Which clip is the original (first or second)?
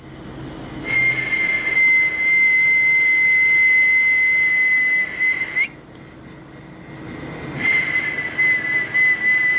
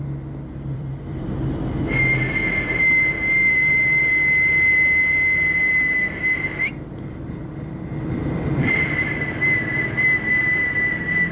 first